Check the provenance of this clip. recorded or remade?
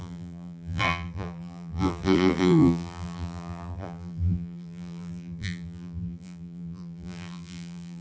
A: remade